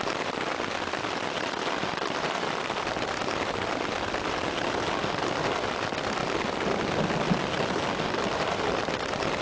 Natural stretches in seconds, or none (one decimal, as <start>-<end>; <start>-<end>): 0.0-9.4